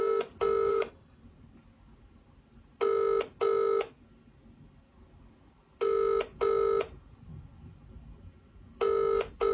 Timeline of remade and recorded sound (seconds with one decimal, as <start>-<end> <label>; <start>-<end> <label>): 0.0-0.7 recorded; 0.7-1.2 remade; 1.2-9.5 recorded